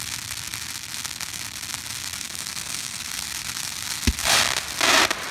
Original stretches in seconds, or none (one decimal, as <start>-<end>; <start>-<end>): 0.0-2.2; 3.0-5.3